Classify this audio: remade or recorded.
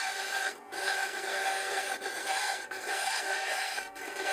remade